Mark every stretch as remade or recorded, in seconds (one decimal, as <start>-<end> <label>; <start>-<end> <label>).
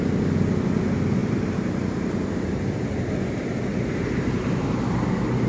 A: 0.0-1.2 recorded; 1.2-3.1 remade; 3.1-3.7 recorded; 3.7-5.1 remade; 5.1-5.5 recorded